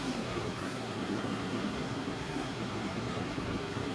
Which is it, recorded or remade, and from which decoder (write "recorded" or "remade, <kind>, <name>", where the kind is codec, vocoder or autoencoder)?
remade, codec, SNAC